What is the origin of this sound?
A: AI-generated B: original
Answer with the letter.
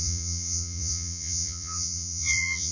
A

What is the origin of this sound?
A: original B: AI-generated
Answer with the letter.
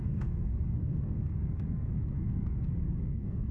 B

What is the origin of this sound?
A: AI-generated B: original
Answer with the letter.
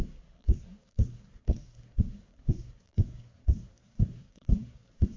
A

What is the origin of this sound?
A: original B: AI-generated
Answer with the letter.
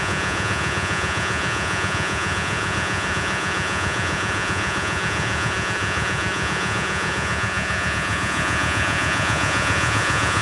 B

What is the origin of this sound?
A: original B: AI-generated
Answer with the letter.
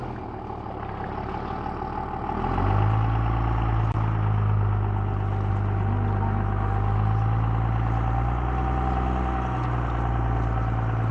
A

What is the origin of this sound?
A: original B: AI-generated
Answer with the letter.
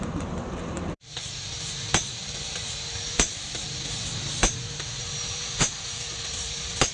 B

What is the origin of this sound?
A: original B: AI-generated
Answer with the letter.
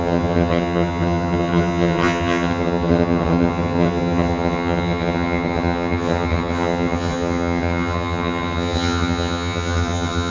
B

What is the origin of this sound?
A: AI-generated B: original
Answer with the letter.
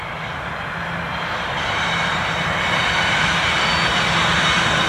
B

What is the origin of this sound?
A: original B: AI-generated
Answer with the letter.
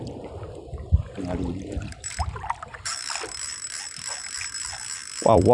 B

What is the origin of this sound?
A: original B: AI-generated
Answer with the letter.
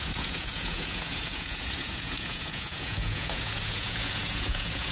B